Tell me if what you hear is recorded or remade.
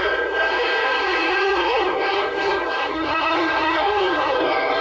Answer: remade